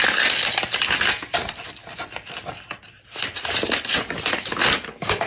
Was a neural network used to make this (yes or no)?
no